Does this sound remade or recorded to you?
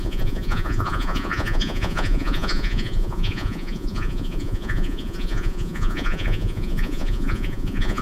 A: remade